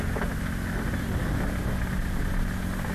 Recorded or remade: recorded